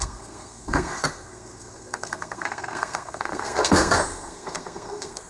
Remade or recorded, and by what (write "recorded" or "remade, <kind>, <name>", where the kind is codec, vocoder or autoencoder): remade, codec, SNAC